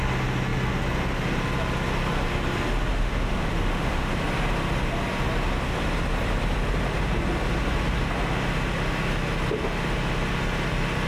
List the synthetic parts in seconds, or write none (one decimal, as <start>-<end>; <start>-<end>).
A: 2.9-4.1